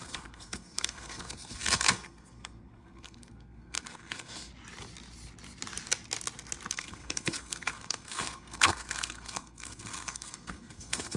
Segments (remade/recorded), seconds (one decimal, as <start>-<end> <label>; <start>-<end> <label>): 0.0-4.5 remade; 4.5-6.7 recorded; 6.7-11.2 remade